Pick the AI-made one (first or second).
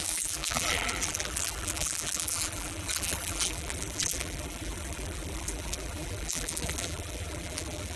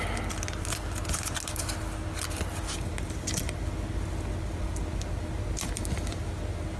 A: first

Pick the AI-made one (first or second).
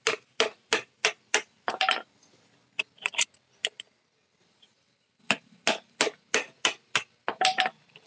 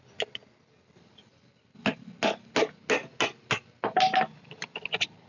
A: first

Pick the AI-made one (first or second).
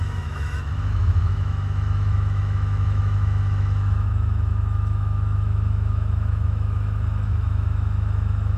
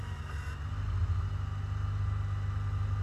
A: first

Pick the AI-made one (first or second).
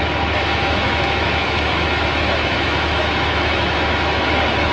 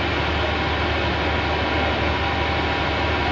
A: first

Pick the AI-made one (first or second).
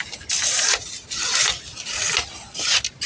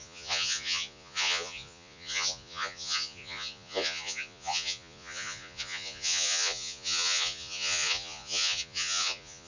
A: second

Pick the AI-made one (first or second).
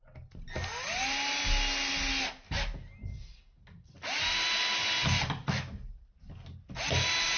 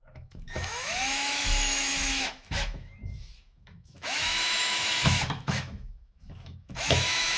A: second